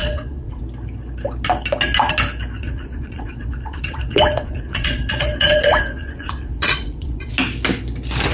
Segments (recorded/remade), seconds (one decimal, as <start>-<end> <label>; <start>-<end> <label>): 0.0-0.6 remade; 0.6-2.6 recorded; 2.6-7.3 remade; 7.3-8.3 recorded

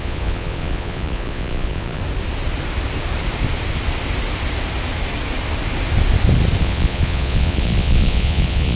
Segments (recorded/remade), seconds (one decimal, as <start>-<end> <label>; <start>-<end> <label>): 0.0-2.0 remade; 2.0-6.6 recorded; 6.6-8.8 remade

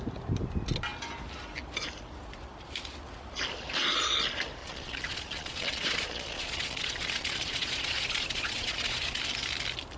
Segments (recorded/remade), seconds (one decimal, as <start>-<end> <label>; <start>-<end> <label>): 0.0-4.6 recorded; 4.6-9.2 remade; 9.2-10.0 recorded

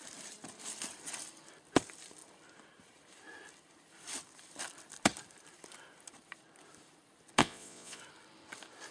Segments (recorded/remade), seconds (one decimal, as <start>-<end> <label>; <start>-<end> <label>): 0.0-7.4 recorded; 7.4-8.0 remade; 8.0-8.9 recorded

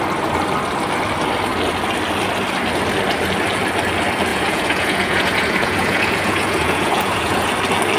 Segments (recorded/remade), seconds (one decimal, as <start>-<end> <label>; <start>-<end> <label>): 0.0-4.3 recorded; 4.3-7.5 remade; 7.5-8.0 recorded

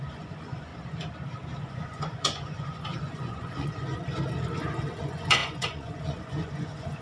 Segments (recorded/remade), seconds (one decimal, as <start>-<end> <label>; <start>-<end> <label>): 0.0-0.7 remade; 0.7-1.6 recorded; 1.6-4.0 remade; 4.0-5.0 recorded; 5.0-7.0 remade